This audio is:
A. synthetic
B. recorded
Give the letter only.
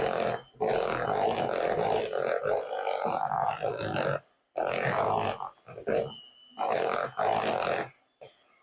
B